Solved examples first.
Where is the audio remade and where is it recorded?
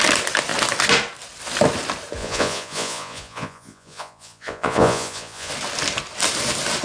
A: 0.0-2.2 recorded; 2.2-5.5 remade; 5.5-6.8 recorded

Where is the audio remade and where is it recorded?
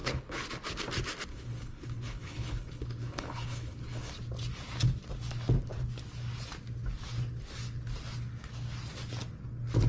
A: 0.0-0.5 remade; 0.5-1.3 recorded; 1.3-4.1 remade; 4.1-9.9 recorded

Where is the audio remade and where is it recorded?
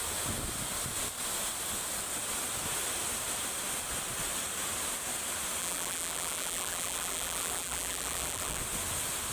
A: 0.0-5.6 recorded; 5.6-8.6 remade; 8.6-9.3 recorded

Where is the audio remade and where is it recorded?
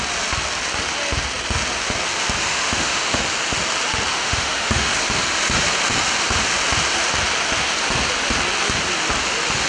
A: 0.0-2.5 recorded; 2.5-3.2 remade; 3.2-4.1 recorded; 4.1-4.9 remade; 4.9-9.7 recorded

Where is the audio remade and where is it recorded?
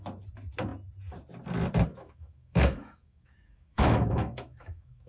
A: 0.0-1.9 recorded; 1.9-5.1 remade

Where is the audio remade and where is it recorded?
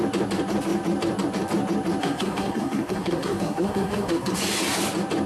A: 0.0-2.0 recorded; 2.0-4.4 remade; 4.4-5.3 recorded